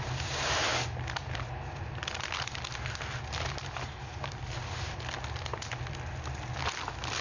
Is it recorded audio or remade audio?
recorded